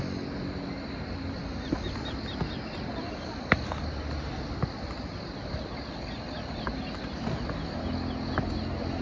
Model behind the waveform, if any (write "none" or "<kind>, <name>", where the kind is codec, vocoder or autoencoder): none